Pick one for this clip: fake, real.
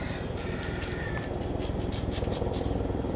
fake